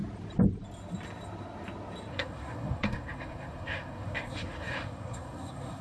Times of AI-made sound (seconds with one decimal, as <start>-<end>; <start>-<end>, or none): 2.1-5.8

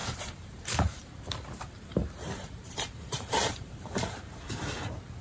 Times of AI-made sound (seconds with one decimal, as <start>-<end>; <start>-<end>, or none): 0.0-1.3; 2.6-4.7

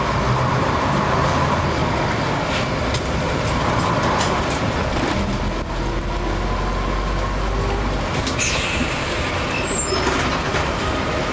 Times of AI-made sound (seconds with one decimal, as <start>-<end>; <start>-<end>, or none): 0.0-1.8; 3.0-4.8; 8.8-11.3